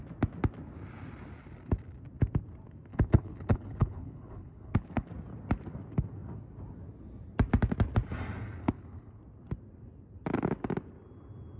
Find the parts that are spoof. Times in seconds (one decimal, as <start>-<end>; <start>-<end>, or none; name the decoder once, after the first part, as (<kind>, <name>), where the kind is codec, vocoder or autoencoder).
2.9-5.1 (codec, HILCodec); 8.6-9.2